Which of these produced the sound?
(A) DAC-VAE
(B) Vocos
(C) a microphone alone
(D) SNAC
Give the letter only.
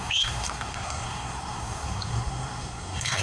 D